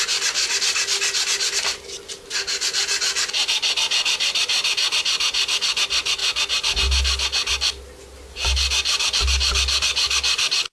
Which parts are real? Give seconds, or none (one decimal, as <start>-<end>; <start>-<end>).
0.0-10.7